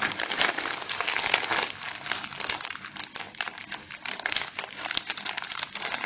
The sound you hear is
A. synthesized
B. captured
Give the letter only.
B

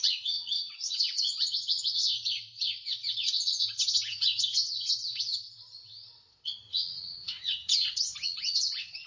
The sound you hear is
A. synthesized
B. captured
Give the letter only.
A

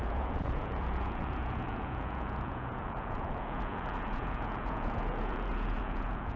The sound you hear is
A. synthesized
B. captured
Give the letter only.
A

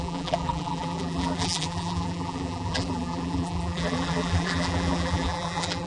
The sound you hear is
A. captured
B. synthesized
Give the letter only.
B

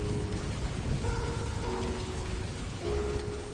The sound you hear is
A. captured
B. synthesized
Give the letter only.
B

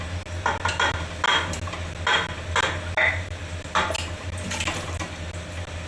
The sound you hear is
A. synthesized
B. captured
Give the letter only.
B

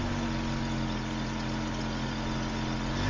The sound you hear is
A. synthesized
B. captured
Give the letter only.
B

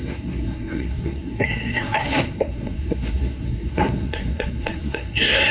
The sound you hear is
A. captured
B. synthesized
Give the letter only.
B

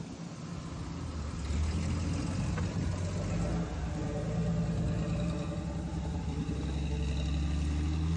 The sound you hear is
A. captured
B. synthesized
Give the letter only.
A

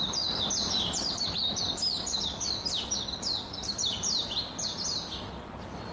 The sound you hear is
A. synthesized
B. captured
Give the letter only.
A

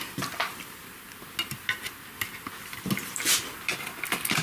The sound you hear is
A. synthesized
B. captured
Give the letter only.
B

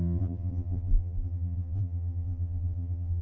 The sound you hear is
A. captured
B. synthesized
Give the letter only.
B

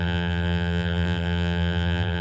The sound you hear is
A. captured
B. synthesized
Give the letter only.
B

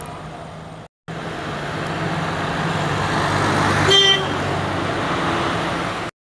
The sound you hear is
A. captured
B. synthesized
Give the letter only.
A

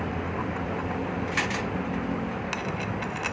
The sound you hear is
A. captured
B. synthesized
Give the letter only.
A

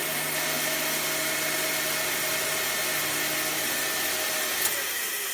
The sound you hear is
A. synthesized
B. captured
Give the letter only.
B